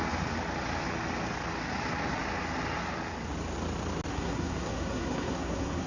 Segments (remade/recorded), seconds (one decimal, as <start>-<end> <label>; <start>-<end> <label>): 0.0-4.1 recorded; 4.1-5.9 remade